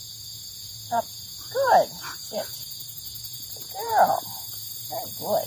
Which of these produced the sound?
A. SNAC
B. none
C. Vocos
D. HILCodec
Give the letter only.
C